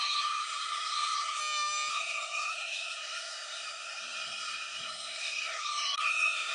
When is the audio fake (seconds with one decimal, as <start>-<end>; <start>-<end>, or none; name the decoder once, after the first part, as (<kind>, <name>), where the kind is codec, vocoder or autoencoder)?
0.0-1.4 (codec, SNAC); 1.9-6.5